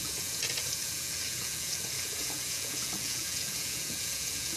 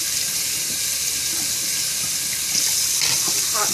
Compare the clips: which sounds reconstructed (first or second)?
first